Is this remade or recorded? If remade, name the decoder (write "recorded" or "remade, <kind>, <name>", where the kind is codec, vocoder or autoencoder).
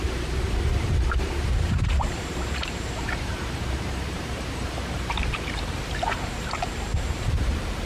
remade, vocoder, BigVGAN v2